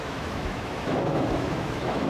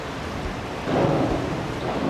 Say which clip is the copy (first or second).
first